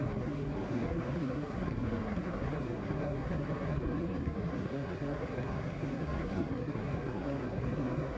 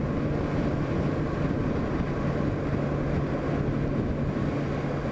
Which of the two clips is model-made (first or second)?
first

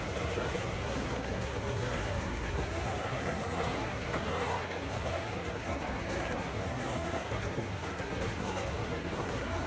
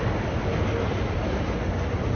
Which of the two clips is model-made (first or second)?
first